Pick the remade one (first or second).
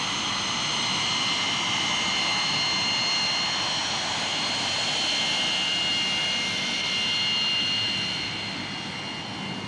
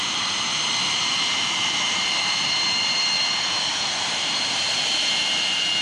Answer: second